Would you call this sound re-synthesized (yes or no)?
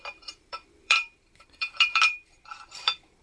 yes